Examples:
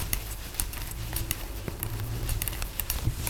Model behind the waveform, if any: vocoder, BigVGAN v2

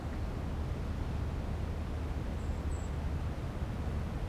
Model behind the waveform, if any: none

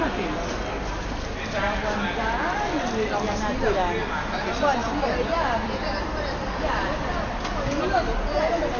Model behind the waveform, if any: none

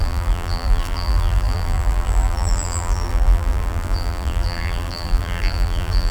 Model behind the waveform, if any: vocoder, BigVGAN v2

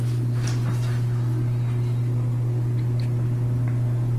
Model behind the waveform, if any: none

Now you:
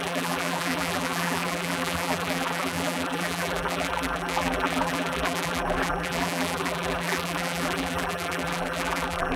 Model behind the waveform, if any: vocoder, BigVGAN v2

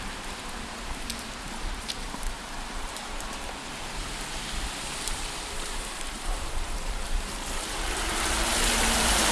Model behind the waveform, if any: vocoder, BigVGAN v2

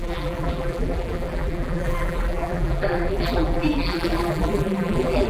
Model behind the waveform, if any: vocoder, BigVGAN v2